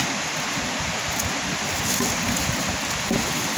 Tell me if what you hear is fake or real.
real